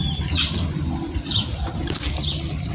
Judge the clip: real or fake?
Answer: real